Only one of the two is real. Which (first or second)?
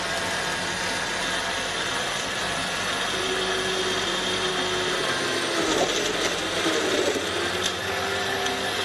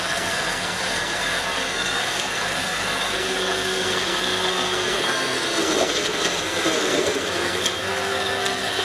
first